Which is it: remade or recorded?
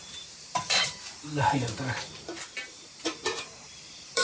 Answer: remade